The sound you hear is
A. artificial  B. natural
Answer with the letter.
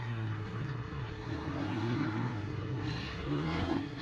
A